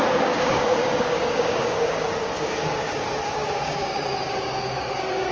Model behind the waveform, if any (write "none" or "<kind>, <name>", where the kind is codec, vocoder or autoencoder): codec, DAC